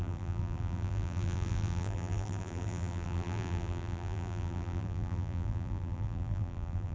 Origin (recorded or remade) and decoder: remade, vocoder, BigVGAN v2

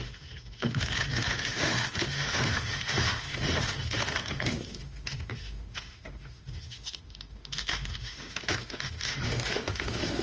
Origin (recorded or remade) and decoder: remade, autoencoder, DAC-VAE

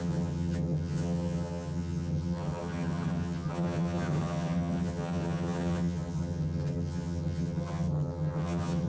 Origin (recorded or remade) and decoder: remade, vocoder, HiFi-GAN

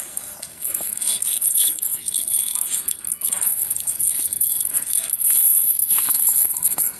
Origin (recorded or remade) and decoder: remade, codec, SNAC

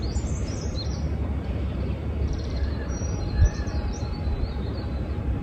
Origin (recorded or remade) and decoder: remade, vocoder, BigVGAN v2